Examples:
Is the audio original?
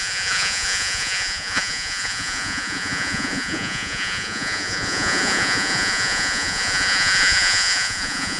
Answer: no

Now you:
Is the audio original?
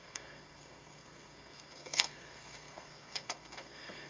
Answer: no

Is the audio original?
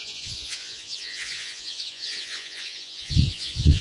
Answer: no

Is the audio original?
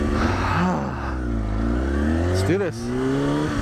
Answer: yes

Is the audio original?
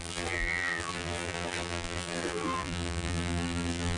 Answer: no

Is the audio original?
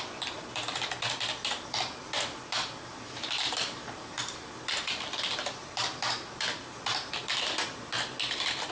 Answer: no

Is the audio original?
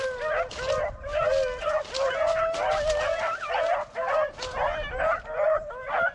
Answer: yes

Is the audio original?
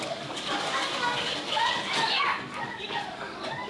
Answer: no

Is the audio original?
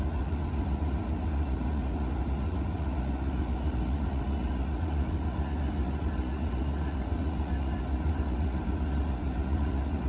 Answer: no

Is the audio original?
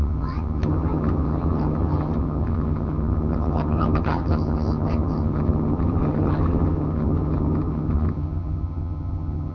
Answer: no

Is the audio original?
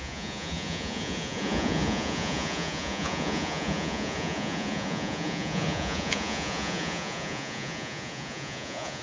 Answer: no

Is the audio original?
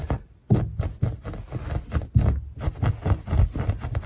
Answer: yes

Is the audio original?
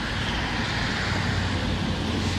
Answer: yes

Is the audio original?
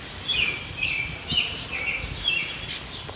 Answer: yes